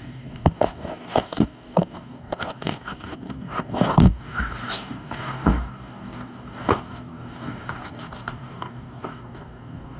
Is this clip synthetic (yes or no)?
yes